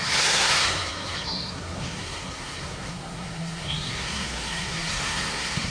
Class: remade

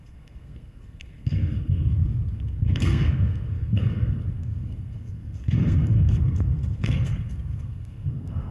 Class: remade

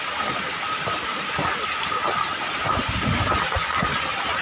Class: recorded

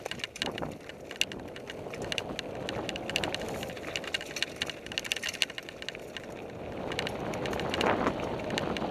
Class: recorded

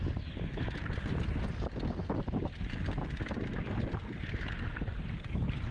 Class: recorded